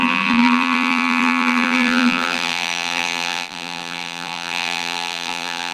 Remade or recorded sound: remade